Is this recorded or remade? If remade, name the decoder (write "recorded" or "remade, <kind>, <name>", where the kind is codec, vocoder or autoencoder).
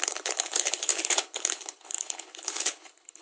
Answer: remade, codec, HILCodec